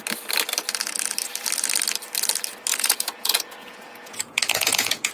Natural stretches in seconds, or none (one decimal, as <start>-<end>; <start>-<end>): 0.0-2.7